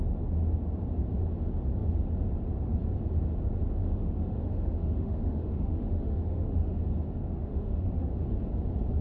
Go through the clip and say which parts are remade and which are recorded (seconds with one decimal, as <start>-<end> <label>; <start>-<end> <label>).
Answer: 0.0-3.8 recorded; 3.8-6.8 remade; 6.8-7.3 recorded; 7.3-8.1 remade; 8.1-9.0 recorded